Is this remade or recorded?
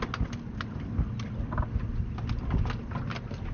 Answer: recorded